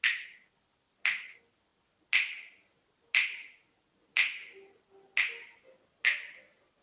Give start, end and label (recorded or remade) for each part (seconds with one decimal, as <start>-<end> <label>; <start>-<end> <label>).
0.0-6.8 recorded